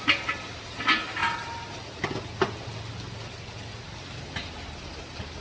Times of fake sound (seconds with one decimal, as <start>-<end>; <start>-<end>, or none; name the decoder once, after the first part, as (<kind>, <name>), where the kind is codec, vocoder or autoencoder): none